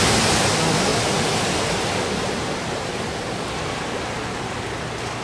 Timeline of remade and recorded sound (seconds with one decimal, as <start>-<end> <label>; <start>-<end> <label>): 0.0-5.2 recorded